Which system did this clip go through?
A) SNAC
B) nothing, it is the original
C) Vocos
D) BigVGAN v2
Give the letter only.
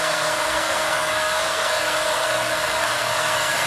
A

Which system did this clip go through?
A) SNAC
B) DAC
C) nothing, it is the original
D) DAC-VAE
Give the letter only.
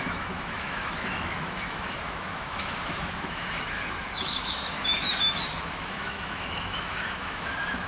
D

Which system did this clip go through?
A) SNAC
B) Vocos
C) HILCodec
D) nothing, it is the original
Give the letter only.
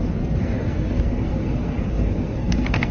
A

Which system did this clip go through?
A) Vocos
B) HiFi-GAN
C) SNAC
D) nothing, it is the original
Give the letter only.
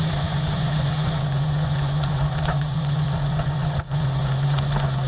A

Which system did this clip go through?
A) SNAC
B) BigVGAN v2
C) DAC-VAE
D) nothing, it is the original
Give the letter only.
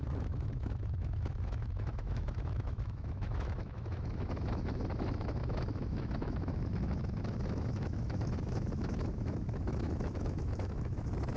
C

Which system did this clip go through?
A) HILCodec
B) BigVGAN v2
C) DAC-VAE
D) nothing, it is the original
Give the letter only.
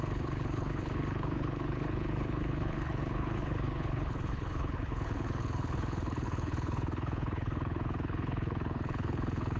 A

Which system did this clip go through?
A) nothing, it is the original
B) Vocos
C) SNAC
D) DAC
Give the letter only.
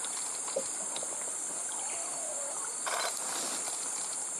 A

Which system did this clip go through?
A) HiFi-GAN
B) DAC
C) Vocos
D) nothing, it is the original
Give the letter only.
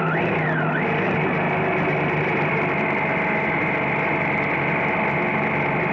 D